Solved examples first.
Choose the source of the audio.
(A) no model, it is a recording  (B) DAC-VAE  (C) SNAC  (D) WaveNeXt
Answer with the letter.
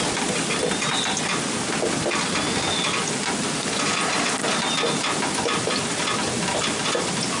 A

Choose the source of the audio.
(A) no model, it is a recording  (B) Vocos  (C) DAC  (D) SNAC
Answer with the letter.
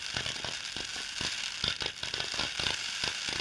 A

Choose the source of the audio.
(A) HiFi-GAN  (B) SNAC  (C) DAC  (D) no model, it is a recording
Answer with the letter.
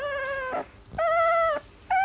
D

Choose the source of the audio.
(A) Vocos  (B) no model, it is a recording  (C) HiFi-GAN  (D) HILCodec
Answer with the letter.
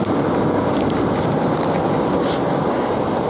B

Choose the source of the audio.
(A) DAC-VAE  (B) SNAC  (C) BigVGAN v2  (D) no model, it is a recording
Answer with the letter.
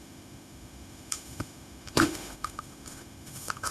A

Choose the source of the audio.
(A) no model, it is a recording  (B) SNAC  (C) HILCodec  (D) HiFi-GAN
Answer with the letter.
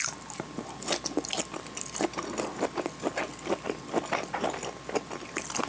A